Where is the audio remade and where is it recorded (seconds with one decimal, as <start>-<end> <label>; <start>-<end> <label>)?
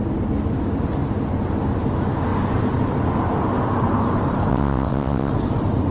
0.0-4.5 recorded; 4.5-5.3 remade; 5.3-5.9 recorded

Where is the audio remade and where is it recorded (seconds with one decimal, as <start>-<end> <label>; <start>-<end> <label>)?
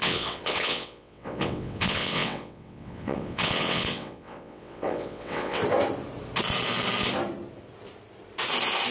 0.0-5.6 remade; 5.6-8.9 recorded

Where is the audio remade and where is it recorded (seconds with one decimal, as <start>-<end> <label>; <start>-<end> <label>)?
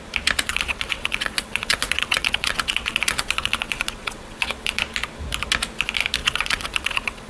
0.0-0.5 recorded; 0.5-4.8 remade; 4.8-6.2 recorded; 6.2-7.3 remade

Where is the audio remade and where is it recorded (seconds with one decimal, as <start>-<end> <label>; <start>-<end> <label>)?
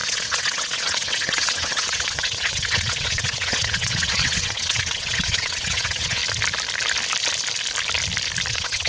0.0-6.2 remade; 6.2-8.5 recorded; 8.5-8.9 remade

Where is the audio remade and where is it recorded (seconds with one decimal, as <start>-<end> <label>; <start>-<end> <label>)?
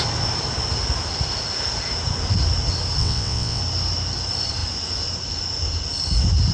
0.0-3.0 recorded; 3.0-3.6 remade; 3.6-6.5 recorded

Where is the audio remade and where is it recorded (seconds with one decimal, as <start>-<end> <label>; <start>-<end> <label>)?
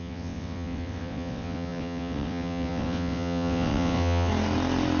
0.0-4.3 remade; 4.3-5.0 recorded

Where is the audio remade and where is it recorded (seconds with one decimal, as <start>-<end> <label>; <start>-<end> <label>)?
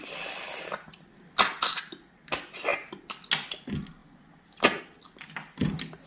0.0-6.1 recorded